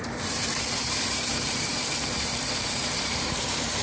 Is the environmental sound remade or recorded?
remade